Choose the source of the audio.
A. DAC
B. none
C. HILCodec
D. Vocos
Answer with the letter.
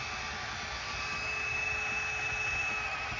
B